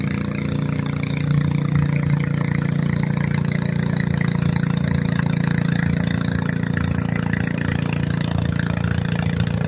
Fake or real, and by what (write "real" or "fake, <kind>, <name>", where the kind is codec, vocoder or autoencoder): real